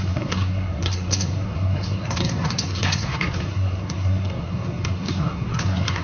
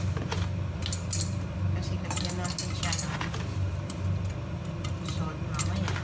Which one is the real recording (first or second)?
second